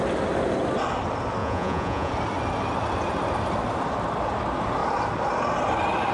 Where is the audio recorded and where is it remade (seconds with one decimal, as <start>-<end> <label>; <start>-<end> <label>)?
0.0-1.4 recorded; 1.4-2.1 remade; 2.1-6.1 recorded